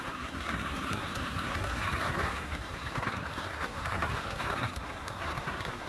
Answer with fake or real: fake